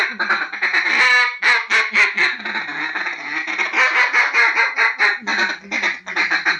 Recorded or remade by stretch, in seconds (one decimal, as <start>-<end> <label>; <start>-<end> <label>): 0.0-6.6 recorded